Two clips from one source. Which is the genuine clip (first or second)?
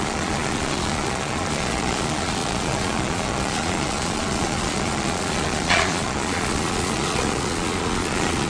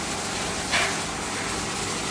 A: second